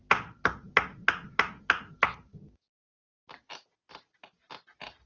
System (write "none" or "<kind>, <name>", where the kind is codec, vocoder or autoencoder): none